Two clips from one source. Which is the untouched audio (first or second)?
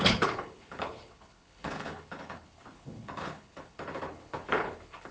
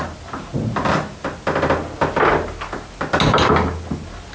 second